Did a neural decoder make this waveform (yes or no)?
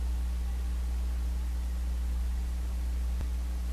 no